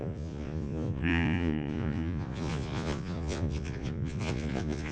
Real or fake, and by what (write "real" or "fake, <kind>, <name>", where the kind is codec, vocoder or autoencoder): fake, vocoder, Vocos